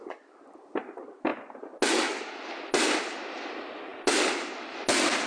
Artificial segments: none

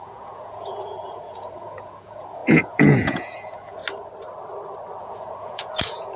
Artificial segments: 0.0-3.8; 5.0-6.2

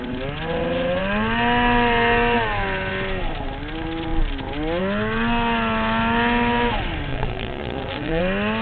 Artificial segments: 7.1-8.2

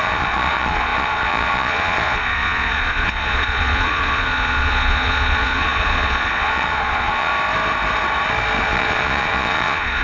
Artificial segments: 0.0-7.3; 8.6-10.0

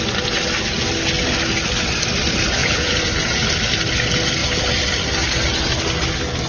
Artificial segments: 2.6-3.4

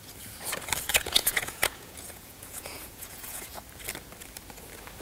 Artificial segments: 0.9-3.6

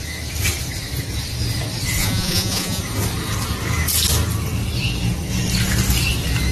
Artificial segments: 2.0-2.8